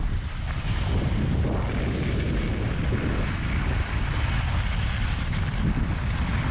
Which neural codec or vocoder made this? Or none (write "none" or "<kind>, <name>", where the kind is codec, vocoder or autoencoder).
none